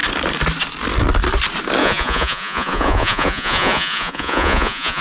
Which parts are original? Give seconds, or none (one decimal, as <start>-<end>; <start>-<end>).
0.0-1.8